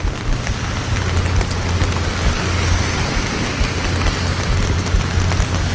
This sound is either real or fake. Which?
real